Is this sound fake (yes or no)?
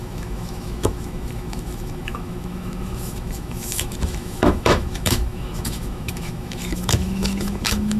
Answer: yes